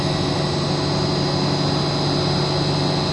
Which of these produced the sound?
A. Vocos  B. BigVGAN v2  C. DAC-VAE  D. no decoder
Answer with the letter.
D